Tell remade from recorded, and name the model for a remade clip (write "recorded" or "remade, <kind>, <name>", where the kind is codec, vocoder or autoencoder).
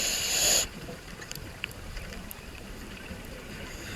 remade, vocoder, BigVGAN v2